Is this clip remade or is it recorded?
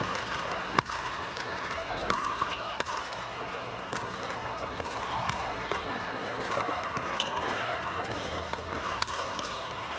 remade